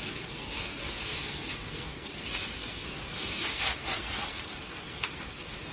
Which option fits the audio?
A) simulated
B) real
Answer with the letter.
A